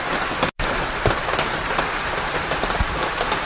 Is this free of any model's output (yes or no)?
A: yes